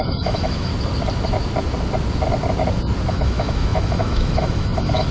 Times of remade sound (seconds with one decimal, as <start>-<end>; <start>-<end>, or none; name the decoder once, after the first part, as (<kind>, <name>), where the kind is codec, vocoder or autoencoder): 0.0-0.7 (autoencoder, DAC-VAE); 3.1-5.1